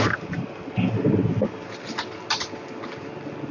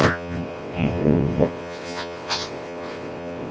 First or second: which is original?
first